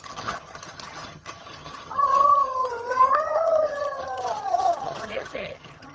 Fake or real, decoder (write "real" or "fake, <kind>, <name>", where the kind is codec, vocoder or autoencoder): fake, vocoder, HiFi-GAN